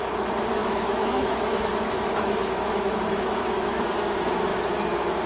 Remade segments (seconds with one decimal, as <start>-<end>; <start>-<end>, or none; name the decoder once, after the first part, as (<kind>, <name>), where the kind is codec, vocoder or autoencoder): 0.6-3.8 (autoencoder, DAC-VAE)